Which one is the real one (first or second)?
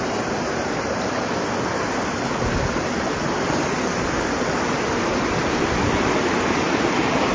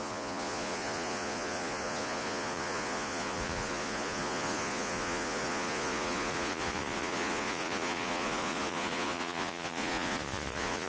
first